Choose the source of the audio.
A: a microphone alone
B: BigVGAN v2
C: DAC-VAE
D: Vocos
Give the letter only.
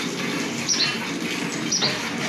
A